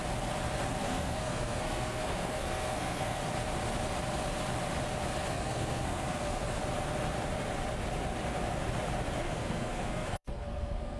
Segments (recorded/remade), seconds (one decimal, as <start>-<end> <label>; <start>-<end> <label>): 0.0-0.8 recorded; 0.8-3.2 remade; 3.2-5.3 recorded; 5.3-6.6 remade; 6.6-9.2 recorded; 9.2-11.0 remade